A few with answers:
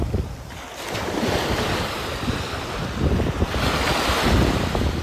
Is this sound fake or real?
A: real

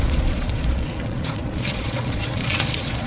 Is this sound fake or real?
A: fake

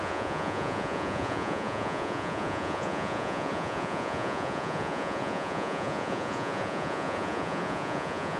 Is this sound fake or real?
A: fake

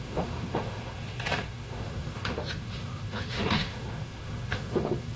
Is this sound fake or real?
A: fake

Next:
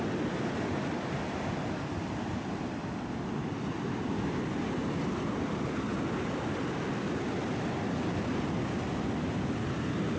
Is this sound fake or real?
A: real